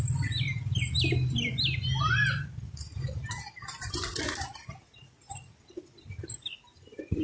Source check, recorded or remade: recorded